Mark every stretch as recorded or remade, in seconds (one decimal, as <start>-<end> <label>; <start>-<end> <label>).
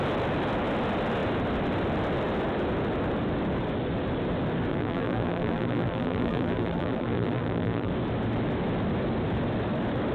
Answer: 0.0-4.7 recorded; 4.7-7.9 remade; 7.9-10.1 recorded